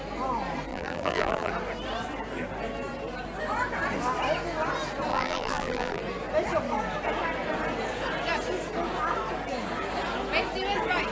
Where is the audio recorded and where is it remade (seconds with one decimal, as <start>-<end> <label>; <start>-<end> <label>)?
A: 0.0-0.7 recorded; 0.7-1.5 remade; 1.5-5.1 recorded; 5.1-6.0 remade; 6.0-11.1 recorded